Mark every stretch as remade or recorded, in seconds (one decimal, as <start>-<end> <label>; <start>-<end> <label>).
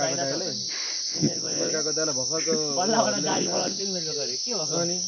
0.0-1.1 recorded; 1.1-1.7 remade; 1.7-3.3 recorded; 3.3-3.8 remade; 3.8-5.1 recorded